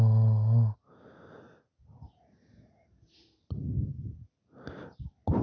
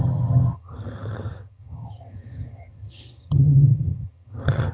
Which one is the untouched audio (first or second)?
first